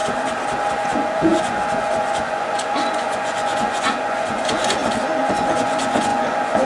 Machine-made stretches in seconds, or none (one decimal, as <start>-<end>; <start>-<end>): 0.7-4.8; 5.3-6.7